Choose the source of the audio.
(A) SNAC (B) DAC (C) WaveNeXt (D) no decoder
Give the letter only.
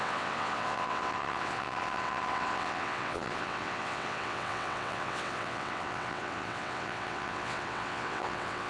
C